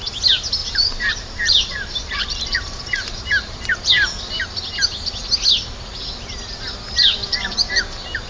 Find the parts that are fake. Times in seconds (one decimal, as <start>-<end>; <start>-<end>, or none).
0.6-3.9; 7.2-7.8